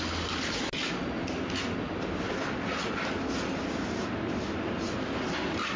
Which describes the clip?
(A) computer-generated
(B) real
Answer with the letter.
B